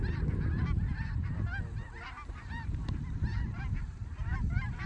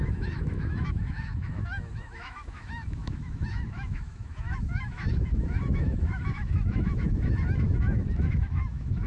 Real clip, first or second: first